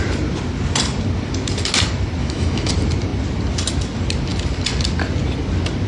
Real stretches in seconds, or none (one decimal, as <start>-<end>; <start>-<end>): 0.0-2.2; 2.7-5.9